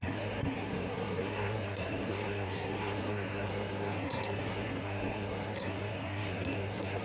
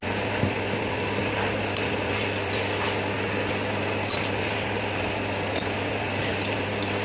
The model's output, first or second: first